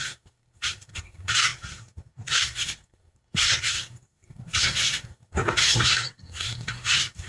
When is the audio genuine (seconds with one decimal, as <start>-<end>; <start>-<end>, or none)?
none

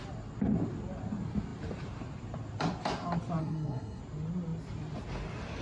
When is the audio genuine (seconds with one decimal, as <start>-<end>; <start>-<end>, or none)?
0.0-3.4; 4.0-5.6